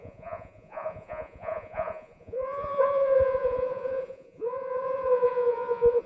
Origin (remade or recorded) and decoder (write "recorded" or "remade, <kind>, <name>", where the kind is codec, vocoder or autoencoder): remade, vocoder, Vocos